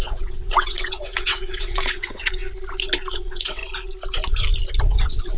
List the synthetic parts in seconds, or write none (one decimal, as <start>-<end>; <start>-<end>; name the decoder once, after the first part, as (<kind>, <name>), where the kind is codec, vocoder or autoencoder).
0.0-2.4 (vocoder, WaveNeXt); 3.1-3.6; 4.8-5.4